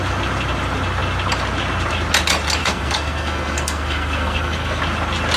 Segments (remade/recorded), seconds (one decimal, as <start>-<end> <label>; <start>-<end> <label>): 0.0-2.6 recorded; 2.6-4.8 remade; 4.8-5.4 recorded

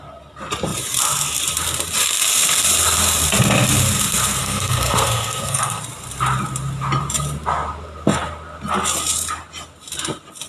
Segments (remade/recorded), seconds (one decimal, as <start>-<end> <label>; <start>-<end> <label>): 0.0-4.4 recorded; 4.4-5.8 remade; 5.8-10.5 recorded

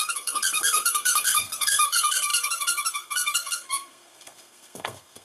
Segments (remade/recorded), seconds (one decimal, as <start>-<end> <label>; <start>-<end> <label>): 0.0-5.2 remade

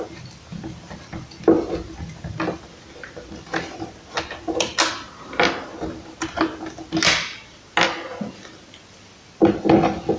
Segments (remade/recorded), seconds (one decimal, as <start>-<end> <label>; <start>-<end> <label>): 0.0-10.2 recorded

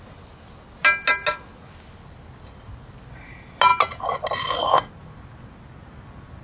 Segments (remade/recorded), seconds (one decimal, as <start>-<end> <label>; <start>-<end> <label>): 0.0-6.4 recorded